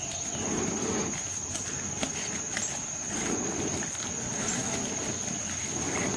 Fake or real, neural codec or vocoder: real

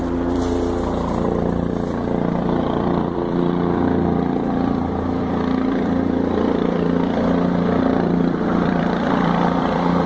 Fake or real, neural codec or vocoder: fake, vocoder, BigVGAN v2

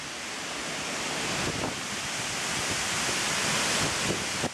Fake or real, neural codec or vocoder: real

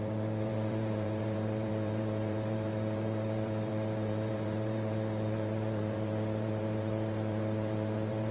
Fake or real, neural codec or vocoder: fake, vocoder, BigVGAN v2